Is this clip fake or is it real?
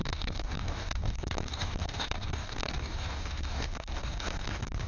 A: fake